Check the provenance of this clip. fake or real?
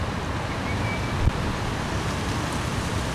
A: real